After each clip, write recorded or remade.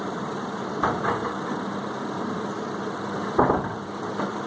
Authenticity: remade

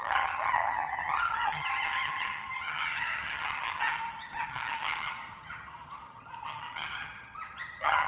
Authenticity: remade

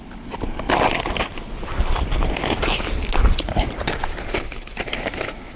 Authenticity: recorded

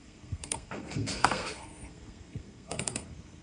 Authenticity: remade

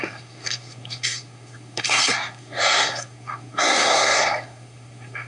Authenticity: remade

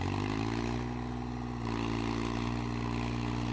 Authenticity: recorded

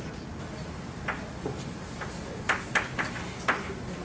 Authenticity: recorded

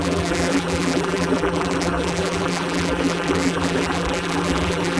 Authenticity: remade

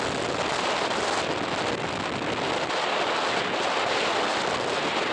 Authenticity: recorded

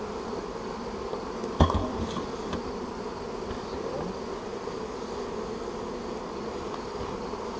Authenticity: recorded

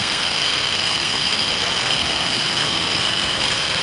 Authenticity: remade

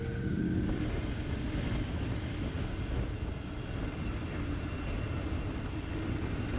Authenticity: recorded